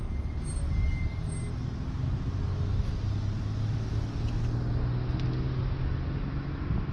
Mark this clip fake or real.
real